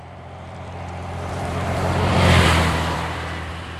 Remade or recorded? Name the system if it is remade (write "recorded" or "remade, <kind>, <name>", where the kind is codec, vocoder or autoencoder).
remade, vocoder, BigVGAN v2